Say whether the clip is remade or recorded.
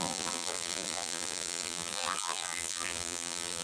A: remade